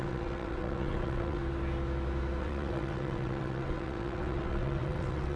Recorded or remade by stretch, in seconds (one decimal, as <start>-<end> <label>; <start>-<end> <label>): 0.0-1.4 remade; 1.4-2.4 recorded; 2.4-5.4 remade